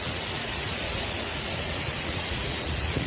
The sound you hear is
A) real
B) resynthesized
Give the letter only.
B